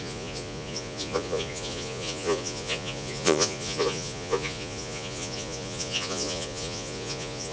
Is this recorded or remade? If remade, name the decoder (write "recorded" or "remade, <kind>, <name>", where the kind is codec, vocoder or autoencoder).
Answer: remade, vocoder, Vocos